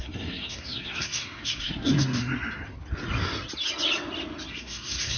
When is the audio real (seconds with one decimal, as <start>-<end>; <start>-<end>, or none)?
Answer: 2.2-4.5